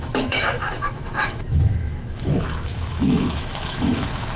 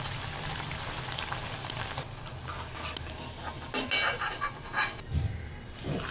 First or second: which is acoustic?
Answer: second